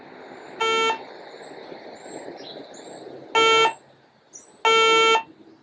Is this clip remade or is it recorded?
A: recorded